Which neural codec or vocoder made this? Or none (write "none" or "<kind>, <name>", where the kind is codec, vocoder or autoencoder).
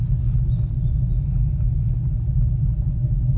none